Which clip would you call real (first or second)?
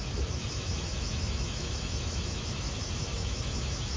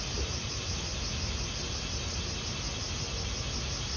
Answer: second